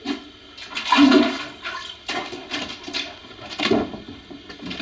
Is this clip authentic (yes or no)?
yes